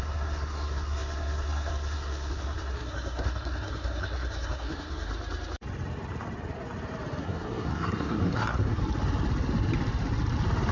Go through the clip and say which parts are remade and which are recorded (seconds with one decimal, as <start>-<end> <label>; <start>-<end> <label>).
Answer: 0.0-5.1 remade; 5.1-7.2 recorded; 7.2-8.8 remade; 8.8-10.7 recorded